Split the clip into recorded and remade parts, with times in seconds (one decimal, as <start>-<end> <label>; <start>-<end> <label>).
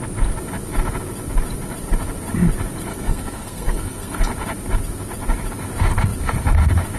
0.0-2.9 recorded; 2.9-4.2 remade; 4.2-7.0 recorded